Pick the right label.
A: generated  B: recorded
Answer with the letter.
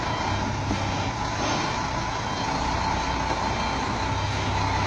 B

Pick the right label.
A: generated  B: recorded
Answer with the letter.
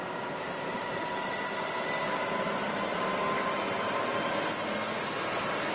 B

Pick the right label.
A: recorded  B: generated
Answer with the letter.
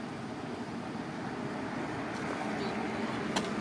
A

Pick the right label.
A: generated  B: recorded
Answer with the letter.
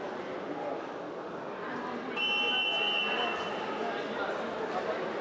B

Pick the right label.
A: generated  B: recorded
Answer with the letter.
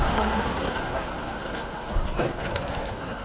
A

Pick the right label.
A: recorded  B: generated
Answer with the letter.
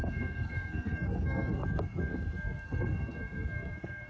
B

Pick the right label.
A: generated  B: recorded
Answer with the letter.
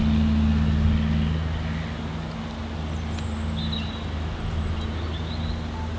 B